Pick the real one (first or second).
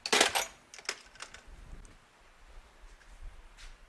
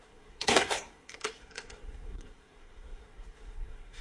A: first